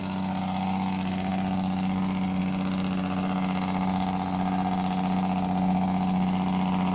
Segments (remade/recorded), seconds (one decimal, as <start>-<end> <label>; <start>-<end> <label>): 0.0-6.9 recorded